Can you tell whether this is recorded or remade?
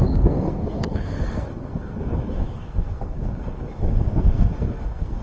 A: remade